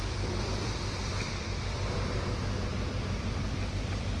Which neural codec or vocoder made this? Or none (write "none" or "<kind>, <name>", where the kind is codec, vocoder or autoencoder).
none